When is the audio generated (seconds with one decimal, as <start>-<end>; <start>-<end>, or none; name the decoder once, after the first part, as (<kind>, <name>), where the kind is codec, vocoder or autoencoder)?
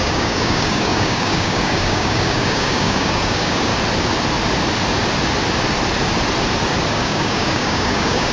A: 0.0-3.7 (codec, DAC); 6.9-8.3